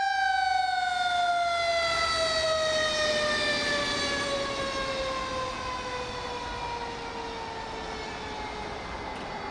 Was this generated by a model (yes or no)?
no